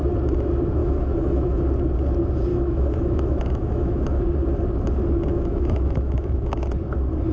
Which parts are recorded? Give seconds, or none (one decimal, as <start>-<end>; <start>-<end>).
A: 0.0-0.8; 1.6-2.5; 4.2-5.3; 6.5-7.3